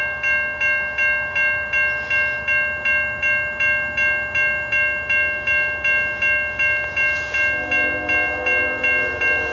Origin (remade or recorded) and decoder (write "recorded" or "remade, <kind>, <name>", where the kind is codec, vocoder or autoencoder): recorded